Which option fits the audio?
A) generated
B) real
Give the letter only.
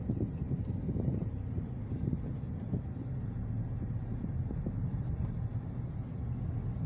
B